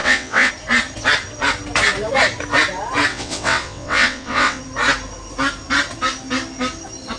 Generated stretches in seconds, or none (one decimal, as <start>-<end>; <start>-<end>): 0.0-0.5; 3.1-4.6